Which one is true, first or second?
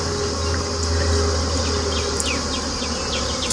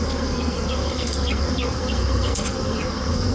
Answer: first